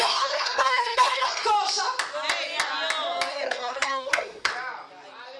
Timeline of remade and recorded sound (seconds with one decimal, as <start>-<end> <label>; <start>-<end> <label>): 0.0-1.4 remade; 1.4-3.3 recorded; 3.3-4.5 remade; 4.5-5.4 recorded